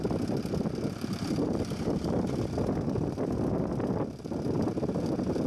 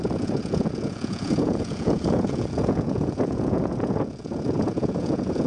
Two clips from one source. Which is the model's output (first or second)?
second